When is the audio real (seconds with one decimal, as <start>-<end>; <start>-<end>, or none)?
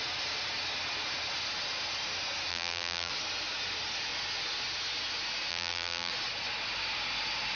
0.0-2.5; 3.1-5.5; 6.1-7.6